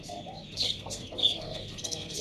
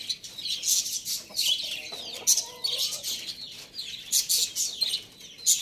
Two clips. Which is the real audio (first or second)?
second